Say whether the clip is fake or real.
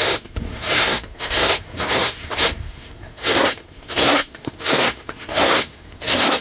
fake